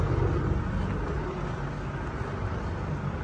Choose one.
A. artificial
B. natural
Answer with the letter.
B